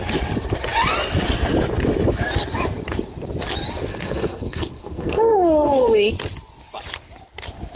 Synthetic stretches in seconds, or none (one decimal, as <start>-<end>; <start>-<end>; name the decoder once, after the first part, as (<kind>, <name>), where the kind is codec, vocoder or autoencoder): 3.9-6.1 (codec, SNAC)